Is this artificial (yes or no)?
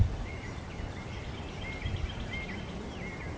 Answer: no